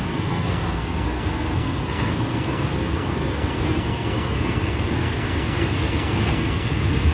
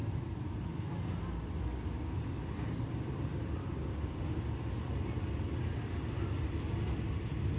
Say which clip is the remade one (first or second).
first